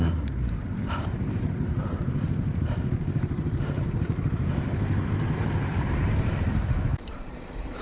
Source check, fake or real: fake